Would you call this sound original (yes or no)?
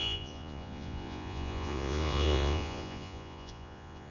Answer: no